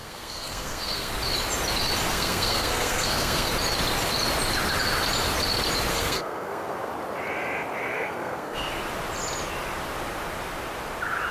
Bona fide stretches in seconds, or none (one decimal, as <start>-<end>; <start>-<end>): 1.1-2.1; 3.5-5.9; 6.9-7.9; 8.7-11.3